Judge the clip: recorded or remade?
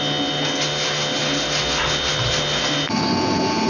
recorded